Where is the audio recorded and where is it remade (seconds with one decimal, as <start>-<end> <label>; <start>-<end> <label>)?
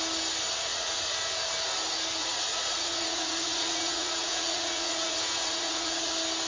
0.0-0.7 recorded; 0.7-1.2 remade; 1.2-2.2 recorded; 2.2-6.1 remade; 6.1-6.5 recorded